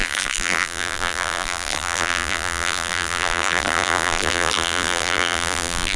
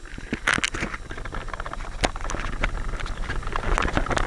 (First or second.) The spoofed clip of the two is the first